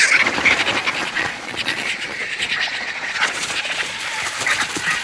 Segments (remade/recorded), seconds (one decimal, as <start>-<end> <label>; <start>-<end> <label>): 0.0-1.0 recorded; 1.0-4.0 remade; 4.0-5.0 recorded